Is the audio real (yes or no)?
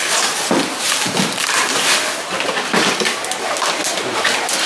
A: yes